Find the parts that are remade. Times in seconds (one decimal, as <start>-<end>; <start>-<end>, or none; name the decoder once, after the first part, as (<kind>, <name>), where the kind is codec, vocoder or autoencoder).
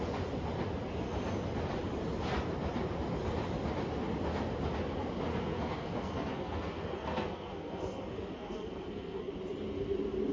5.3-9.3 (codec, SNAC)